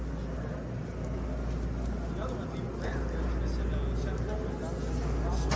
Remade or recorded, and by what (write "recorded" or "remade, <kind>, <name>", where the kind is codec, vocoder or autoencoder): recorded